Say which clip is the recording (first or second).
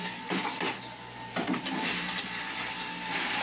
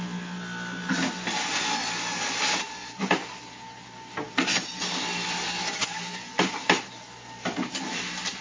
second